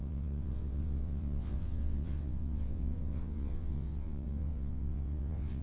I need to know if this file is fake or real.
fake